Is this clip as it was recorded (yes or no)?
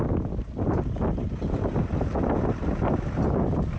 yes